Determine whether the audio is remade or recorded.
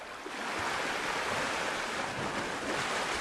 recorded